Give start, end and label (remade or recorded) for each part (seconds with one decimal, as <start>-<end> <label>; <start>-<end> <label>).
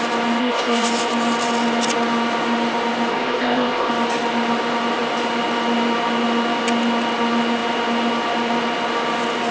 0.0-0.4 recorded; 0.4-0.9 remade; 0.9-3.1 recorded; 3.1-3.9 remade; 3.9-9.5 recorded